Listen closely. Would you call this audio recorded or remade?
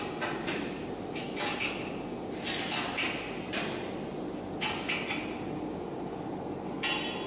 recorded